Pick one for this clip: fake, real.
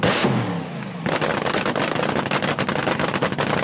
real